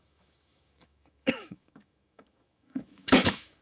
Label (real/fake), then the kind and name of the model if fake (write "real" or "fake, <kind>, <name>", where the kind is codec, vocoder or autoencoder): fake, autoencoder, DAC-VAE